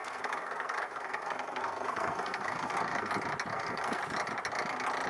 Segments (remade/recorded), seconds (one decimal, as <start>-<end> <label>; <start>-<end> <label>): 0.0-3.1 remade; 3.1-3.5 recorded; 3.5-4.0 remade; 4.0-5.1 recorded